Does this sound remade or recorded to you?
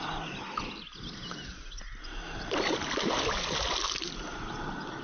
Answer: recorded